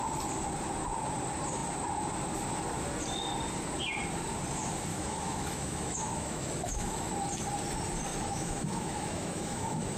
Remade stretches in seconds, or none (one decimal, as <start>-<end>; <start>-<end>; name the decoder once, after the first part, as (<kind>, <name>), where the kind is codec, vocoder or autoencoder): 4.9-7.1 (autoencoder, DAC-VAE); 8.1-10.0